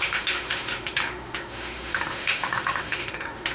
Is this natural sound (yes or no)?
no